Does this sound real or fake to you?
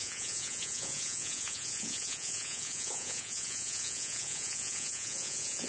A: fake